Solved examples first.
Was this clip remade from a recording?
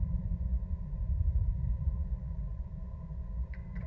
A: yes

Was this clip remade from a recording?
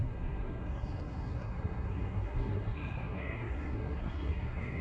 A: yes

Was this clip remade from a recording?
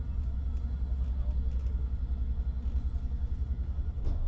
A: no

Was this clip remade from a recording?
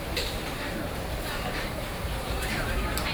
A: yes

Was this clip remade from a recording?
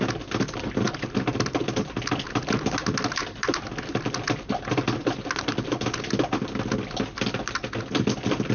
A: no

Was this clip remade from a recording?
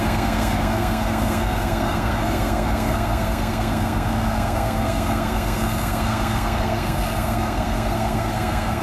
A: yes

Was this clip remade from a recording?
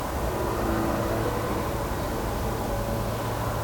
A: no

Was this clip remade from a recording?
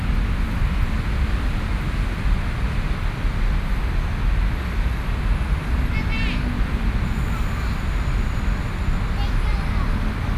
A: no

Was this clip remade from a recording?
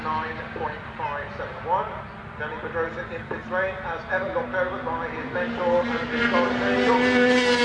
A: no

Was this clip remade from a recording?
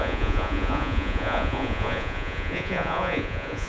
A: yes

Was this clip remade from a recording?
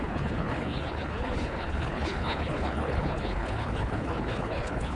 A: yes